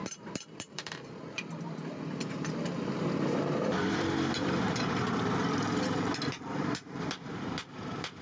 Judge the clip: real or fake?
fake